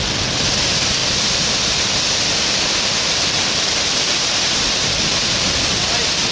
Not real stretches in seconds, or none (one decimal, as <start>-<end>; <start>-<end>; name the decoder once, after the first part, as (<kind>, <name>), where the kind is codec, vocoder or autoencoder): 1.0-4.8 (vocoder, BigVGAN v2)